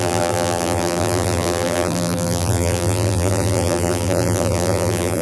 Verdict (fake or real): fake